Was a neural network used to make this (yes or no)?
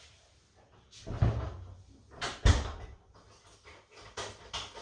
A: no